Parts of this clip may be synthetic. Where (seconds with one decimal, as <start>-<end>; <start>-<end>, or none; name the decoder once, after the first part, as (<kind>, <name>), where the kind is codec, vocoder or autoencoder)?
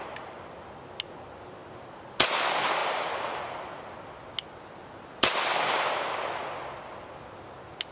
0.0-0.6 (vocoder, BigVGAN v2); 2.8-3.4